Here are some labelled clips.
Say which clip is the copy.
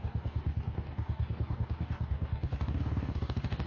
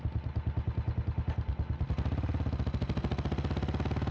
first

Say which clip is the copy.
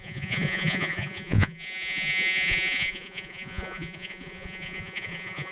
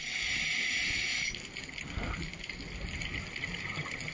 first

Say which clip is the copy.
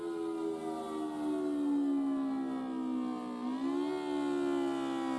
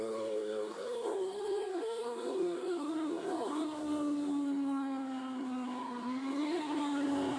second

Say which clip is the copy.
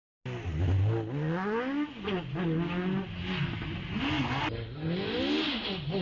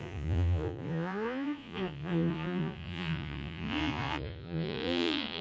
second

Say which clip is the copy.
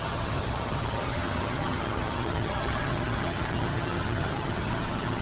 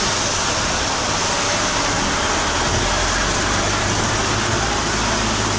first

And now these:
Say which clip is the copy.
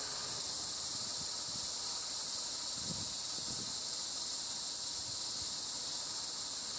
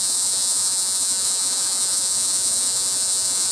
second